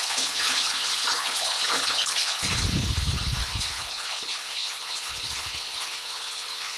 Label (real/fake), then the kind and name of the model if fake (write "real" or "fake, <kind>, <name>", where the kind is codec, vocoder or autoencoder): fake, codec, HILCodec